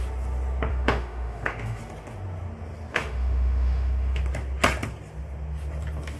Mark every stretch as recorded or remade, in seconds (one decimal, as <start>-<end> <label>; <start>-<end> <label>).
0.0-0.7 recorded; 0.7-1.8 remade; 1.8-2.9 recorded; 2.9-4.2 remade; 4.2-6.2 recorded